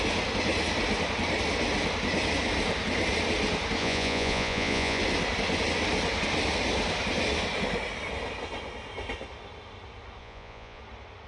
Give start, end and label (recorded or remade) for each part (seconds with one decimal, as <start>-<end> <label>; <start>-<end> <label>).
0.0-3.8 recorded; 3.8-5.0 remade; 5.0-10.2 recorded; 10.2-10.8 remade; 10.8-11.3 recorded